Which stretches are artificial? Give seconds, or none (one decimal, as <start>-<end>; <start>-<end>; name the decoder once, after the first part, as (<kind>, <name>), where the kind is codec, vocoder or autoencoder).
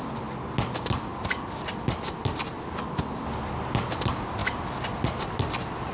none